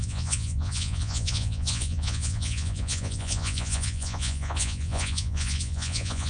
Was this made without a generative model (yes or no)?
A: no